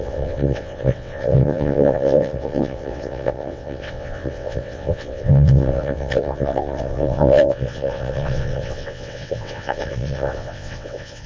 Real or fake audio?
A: fake